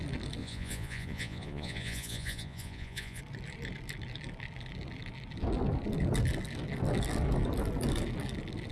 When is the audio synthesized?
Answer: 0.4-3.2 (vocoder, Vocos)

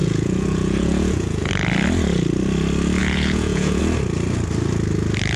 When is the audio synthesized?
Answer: 0.0-1.5 (vocoder, Vocos); 3.0-3.8

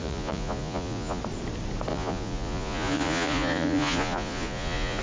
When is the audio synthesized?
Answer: 0.0-1.2 (vocoder, Vocos); 1.9-5.0

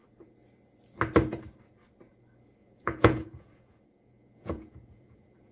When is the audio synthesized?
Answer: 2.4-5.5 (vocoder, Vocos)

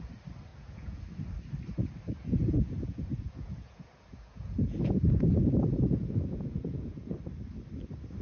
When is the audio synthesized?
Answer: 0.5-1.0 (vocoder, Vocos); 2.2-7.1

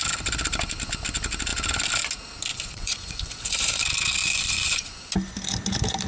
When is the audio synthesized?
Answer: 2.5-3.8 (vocoder, Vocos); 4.2-5.1

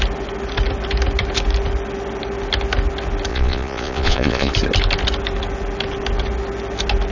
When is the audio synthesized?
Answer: 3.3-4.5 (vocoder, Vocos)